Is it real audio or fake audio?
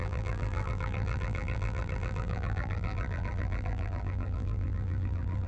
fake